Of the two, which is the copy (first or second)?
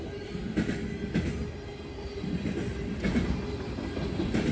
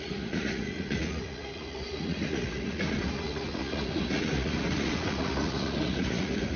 second